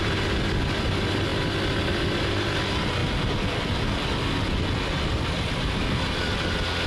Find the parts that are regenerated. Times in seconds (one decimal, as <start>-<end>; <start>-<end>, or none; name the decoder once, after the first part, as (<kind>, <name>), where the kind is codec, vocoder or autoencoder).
none